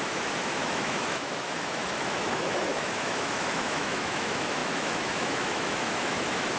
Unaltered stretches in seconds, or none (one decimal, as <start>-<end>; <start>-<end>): none